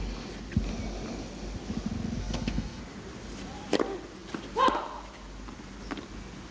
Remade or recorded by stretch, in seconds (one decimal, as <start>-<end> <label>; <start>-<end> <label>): 0.0-2.2 recorded; 2.2-2.8 remade; 2.8-6.5 recorded